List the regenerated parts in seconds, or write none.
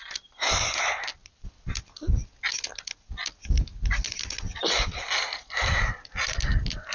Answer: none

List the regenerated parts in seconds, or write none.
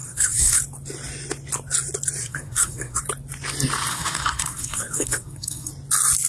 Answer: 0.0-0.6 (codec, SNAC); 2.2-3.0; 3.9-5.7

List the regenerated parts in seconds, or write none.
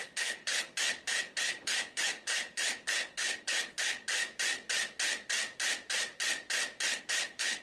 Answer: 0.0-4.1 (codec, HILCodec); 7.0-7.6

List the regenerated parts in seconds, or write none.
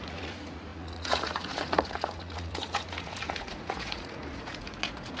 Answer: 0.0-5.2 (vocoder, Vocos)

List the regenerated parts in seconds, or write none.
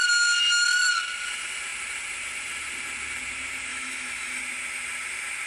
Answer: 3.7-4.4 (autoencoder, DAC-VAE)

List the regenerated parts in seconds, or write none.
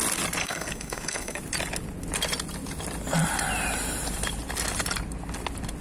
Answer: 0.4-1.4 (codec, SNAC)